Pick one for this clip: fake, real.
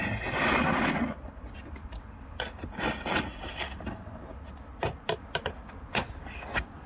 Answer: real